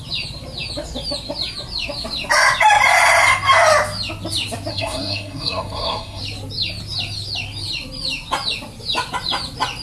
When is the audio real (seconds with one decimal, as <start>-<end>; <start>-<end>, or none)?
0.0-4.7; 6.2-9.8